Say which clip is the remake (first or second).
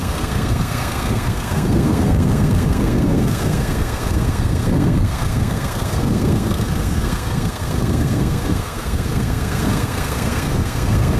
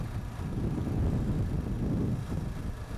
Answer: first